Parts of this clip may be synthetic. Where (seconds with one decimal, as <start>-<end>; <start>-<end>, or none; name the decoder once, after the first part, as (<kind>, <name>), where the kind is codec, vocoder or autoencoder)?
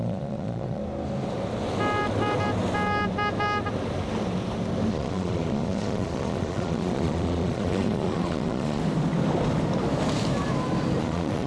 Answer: 0.0-0.8 (vocoder, Vocos); 4.9-8.8; 11.0-11.5